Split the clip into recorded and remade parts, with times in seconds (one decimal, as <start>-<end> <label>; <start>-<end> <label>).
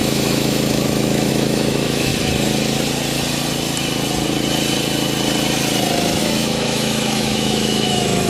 0.0-2.1 remade; 2.1-6.2 recorded; 6.2-8.3 remade